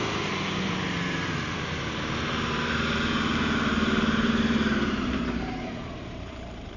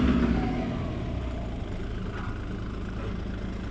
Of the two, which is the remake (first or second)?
first